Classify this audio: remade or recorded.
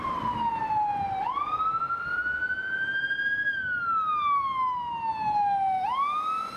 recorded